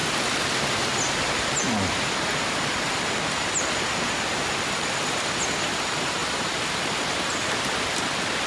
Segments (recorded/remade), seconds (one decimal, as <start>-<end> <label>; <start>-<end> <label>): 0.0-8.5 recorded